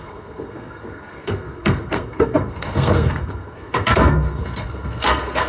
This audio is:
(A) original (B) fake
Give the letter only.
B